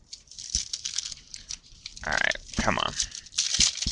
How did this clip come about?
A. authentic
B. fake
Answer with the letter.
A